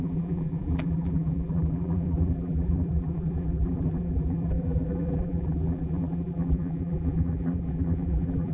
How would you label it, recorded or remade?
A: remade